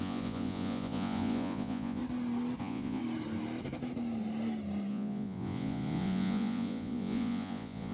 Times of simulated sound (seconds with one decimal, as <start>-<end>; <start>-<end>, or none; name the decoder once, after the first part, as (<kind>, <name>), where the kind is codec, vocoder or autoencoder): 0.0-2.0 (vocoder, Vocos); 2.6-3.0; 4.9-7.9